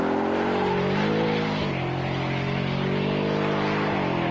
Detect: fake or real real